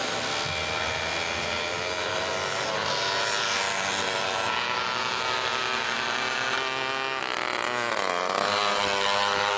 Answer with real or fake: real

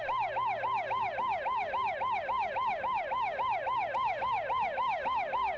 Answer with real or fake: real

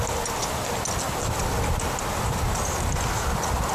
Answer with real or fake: real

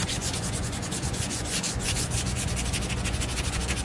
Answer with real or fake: fake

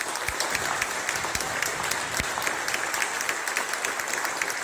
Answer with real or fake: real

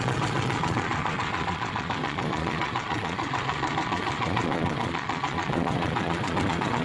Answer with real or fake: fake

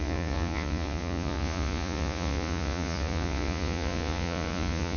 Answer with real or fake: fake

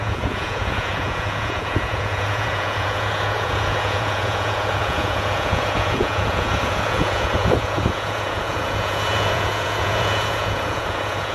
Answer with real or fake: fake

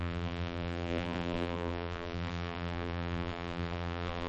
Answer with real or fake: fake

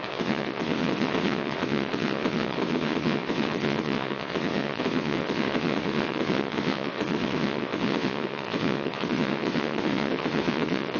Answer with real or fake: fake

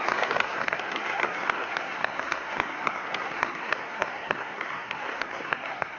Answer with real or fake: fake